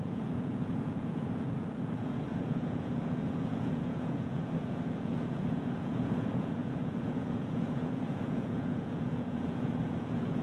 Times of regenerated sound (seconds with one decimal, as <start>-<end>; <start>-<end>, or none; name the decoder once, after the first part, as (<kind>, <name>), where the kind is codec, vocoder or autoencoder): 0.0-10.4 (vocoder, Vocos)